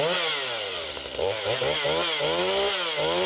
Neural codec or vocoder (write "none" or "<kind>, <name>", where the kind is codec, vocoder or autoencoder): none